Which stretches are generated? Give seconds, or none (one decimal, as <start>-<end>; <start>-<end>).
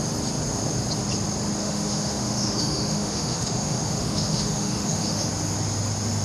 1.6-5.3